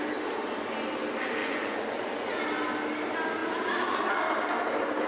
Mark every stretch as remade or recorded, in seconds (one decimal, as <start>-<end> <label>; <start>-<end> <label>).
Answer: 0.0-1.4 recorded; 1.4-2.4 remade; 2.4-5.1 recorded